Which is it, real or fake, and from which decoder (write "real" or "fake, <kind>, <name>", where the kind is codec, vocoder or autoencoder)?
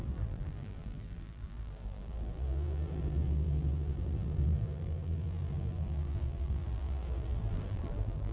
fake, vocoder, BigVGAN v2